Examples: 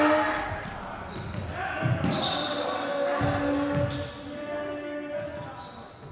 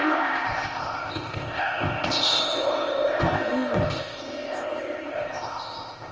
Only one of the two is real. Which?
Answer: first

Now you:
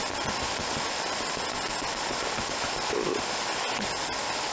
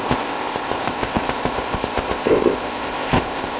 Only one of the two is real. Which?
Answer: first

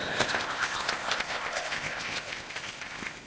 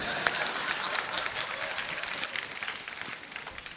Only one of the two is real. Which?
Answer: second